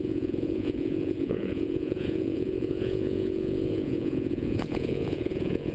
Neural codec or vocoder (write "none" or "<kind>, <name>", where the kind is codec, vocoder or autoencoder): vocoder, Vocos